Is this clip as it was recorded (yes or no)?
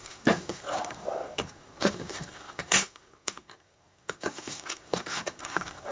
no